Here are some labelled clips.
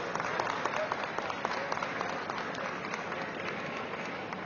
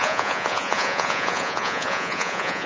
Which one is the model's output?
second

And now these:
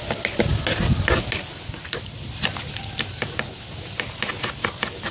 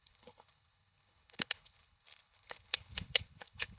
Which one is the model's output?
second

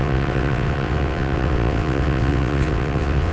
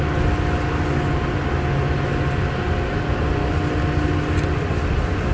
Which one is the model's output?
first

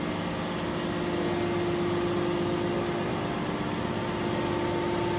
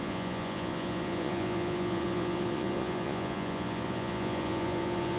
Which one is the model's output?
second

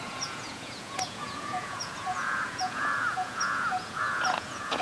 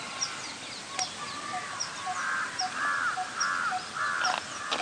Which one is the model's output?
first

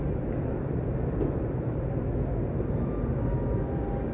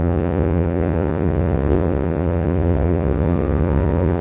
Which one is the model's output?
second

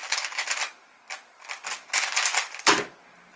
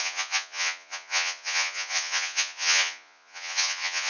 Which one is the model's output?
second